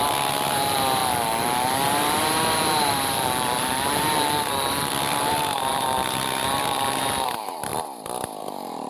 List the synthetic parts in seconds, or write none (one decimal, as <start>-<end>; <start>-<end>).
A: 0.0-1.0; 1.9-7.7; 8.4-8.9